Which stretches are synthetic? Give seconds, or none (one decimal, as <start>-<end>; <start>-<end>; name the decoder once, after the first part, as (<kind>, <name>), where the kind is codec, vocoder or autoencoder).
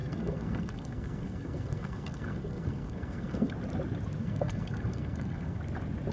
0.0-3.5 (codec, SNAC); 4.2-5.6